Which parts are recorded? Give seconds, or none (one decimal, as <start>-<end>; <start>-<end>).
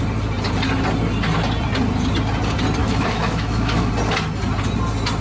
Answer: 0.0-2.8; 3.9-5.2